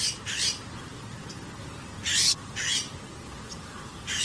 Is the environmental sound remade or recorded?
remade